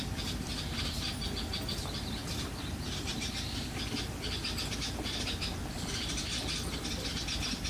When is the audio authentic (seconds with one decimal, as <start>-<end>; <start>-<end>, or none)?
0.0-7.7